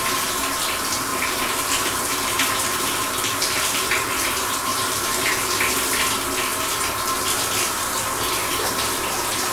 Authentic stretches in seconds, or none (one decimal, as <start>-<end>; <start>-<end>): 0.0-1.1; 4.3-4.7; 5.4-9.5